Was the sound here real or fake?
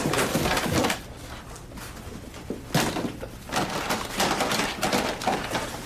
real